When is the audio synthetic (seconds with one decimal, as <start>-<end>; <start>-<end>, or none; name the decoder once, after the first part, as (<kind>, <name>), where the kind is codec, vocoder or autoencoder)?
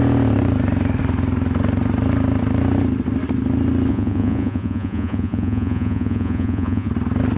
3.9-6.9 (vocoder, Vocos)